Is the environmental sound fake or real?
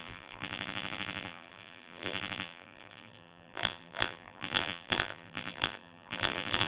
fake